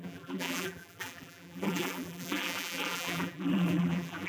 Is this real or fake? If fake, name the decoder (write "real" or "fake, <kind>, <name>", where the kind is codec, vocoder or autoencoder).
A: fake, vocoder, BigVGAN v2